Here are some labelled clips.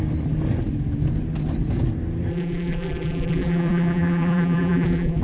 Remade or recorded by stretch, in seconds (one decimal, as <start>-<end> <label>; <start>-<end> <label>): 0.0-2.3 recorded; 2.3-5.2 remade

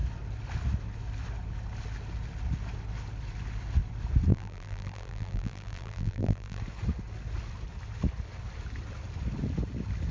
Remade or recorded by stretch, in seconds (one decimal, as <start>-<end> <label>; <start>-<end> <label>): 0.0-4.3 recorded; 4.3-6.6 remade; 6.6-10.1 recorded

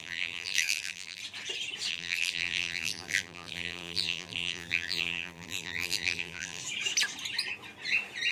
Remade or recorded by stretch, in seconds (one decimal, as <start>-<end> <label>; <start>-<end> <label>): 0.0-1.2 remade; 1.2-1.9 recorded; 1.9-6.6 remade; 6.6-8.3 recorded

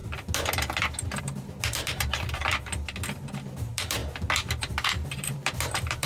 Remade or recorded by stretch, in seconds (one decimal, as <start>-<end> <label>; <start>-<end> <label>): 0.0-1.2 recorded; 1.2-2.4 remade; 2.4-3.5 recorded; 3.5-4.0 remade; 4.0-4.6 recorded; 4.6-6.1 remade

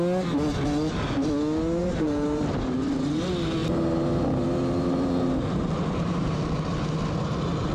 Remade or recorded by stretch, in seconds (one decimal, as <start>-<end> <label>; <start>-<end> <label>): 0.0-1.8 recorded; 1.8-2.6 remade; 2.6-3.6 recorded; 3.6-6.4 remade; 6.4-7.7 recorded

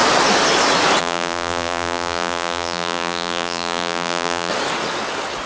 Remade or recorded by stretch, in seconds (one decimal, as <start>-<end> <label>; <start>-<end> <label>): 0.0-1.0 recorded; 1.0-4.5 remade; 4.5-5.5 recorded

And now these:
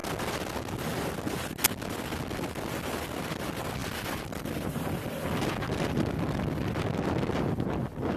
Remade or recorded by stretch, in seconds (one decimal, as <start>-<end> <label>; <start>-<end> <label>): 0.0-3.8 recorded; 3.8-5.5 remade; 5.5-8.2 recorded

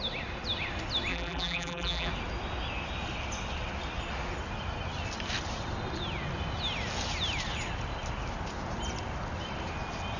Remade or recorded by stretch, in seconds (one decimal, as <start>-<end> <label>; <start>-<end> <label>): 0.0-1.1 recorded; 1.1-2.1 remade; 2.1-10.2 recorded